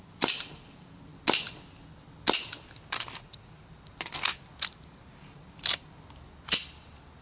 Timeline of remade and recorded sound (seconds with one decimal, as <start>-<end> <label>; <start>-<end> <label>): 0.0-1.1 remade; 1.1-4.8 recorded; 4.8-6.3 remade; 6.3-7.2 recorded